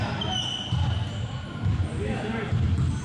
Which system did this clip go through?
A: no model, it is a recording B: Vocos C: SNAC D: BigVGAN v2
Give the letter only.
A